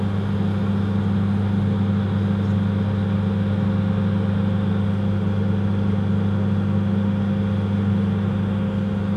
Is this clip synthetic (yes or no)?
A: no